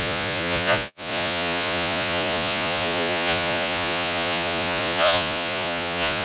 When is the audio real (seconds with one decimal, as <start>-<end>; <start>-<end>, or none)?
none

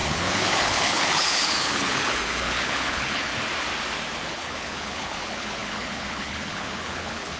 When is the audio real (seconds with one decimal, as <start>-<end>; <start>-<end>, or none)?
3.3-4.2

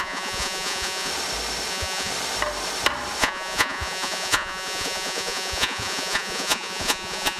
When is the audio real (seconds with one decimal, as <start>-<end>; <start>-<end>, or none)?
1.1-1.7; 2.1-3.2

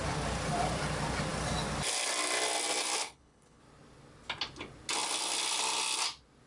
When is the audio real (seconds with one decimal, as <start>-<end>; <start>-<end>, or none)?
0.0-3.0; 3.6-6.5

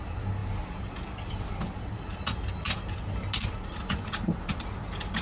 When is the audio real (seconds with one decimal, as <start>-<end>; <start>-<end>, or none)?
0.0-5.2

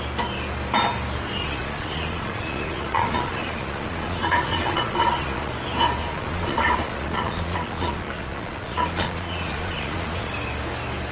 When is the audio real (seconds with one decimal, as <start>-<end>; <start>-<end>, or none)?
0.0-1.4; 5.5-6.0; 10.3-11.1